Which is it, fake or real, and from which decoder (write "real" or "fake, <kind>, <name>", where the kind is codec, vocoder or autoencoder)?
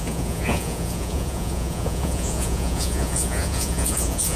fake, vocoder, Vocos